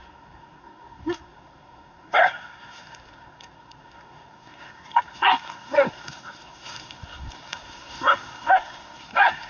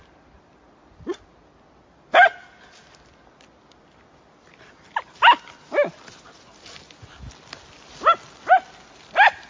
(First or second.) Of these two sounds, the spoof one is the first